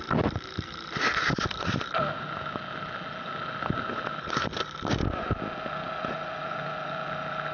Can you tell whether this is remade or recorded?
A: recorded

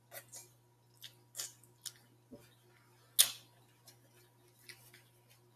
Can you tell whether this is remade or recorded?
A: recorded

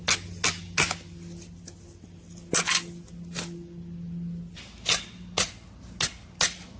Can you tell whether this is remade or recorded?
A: recorded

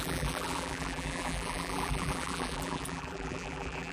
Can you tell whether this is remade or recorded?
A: remade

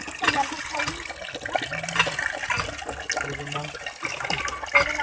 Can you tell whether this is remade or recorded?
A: recorded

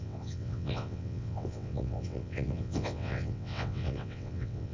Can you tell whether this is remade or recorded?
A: remade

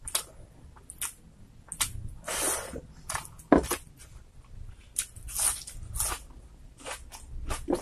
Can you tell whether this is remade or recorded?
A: recorded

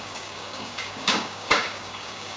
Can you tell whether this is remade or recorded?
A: remade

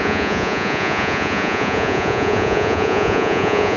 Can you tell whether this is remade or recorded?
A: remade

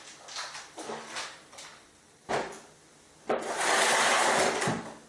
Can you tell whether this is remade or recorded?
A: recorded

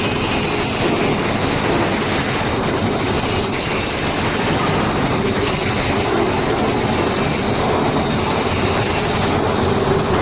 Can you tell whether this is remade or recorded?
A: recorded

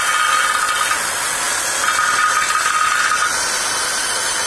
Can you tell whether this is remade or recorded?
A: recorded